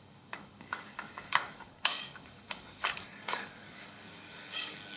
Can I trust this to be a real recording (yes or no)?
no